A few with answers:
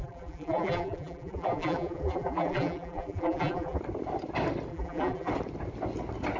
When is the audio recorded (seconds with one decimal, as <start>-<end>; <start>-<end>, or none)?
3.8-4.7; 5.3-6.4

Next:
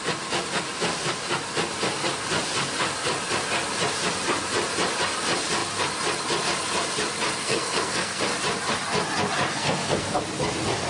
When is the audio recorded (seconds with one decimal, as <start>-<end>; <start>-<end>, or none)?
0.0-7.4; 8.2-9.5; 10.2-10.9

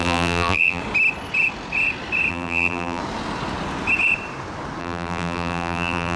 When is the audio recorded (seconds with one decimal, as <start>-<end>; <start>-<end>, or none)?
0.8-2.3; 3.0-4.8